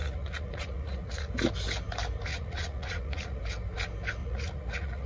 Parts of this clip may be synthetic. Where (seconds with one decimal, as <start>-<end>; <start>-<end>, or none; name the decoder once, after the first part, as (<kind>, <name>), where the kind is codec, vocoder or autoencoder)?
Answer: 0.0-1.3 (vocoder, Vocos); 2.3-3.4; 4.2-5.1